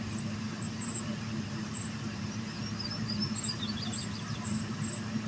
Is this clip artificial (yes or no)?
yes